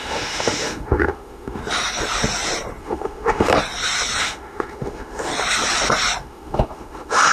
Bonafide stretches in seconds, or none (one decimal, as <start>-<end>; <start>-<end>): 1.6-2.8; 3.5-4.2; 5.3-6.2

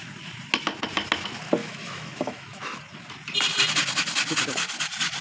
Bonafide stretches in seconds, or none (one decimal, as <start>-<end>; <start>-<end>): 0.0-1.6; 2.8-5.2